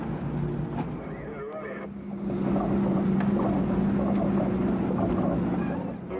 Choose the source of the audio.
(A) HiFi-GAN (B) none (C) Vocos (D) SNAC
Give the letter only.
B